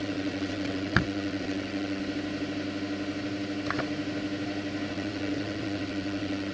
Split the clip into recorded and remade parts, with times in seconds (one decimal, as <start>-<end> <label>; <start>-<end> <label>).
0.0-2.0 remade; 2.0-4.9 recorded; 4.9-6.5 remade